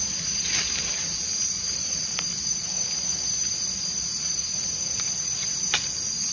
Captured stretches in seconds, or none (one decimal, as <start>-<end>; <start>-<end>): 0.0-3.4; 5.6-6.3